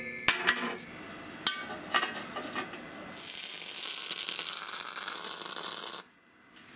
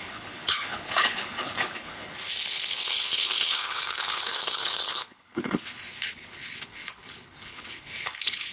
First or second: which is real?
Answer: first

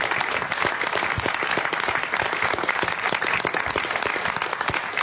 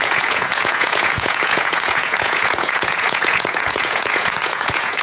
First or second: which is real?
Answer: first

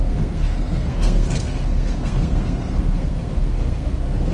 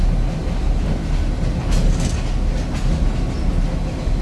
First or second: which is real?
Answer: second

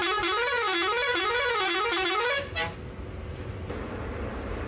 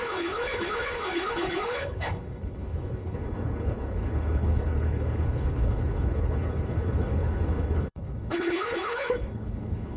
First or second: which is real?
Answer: first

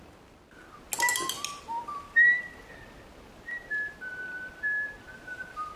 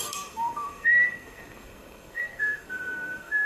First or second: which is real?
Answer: first